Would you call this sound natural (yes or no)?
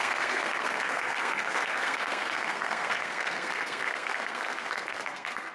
no